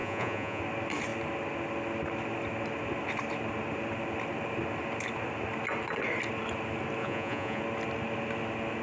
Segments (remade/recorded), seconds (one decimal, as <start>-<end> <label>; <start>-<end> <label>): 0.0-0.6 remade; 0.6-7.0 recorded; 7.0-7.6 remade; 7.6-8.8 recorded